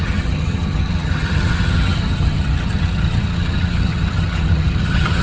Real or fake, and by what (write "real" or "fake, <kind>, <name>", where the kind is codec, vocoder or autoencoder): fake, vocoder, HiFi-GAN